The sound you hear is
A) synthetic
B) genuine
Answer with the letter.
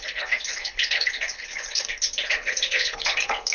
A